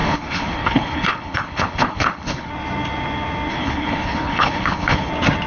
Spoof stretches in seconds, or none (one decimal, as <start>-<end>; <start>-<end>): 0.0-2.5; 3.5-5.1